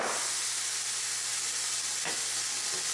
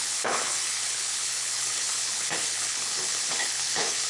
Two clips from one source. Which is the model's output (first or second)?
second